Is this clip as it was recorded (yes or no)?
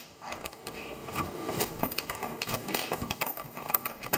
no